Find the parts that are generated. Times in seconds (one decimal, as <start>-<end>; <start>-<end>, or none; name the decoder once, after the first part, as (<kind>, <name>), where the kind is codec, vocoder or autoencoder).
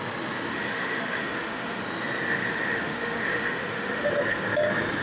0.5-1.8 (autoencoder, DAC-VAE); 2.4-4.1